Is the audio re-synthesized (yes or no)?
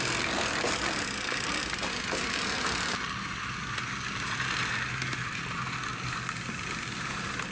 no